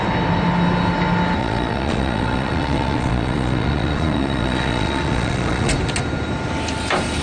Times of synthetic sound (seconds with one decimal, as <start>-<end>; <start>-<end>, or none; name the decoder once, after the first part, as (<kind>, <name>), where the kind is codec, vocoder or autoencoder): 1.4-5.7 (vocoder, Vocos)